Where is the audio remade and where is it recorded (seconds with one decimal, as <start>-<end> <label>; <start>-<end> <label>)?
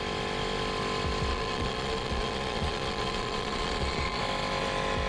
0.0-1.3 recorded; 1.3-4.2 remade; 4.2-5.1 recorded